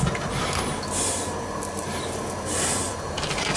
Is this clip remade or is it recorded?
recorded